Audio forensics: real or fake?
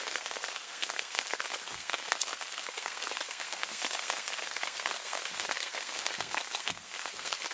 fake